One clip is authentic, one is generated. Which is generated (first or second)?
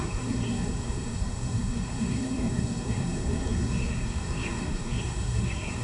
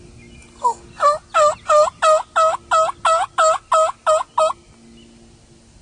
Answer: first